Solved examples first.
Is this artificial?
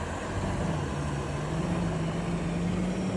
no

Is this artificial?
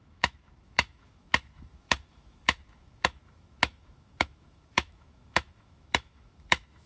yes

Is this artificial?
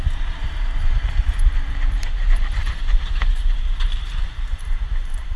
yes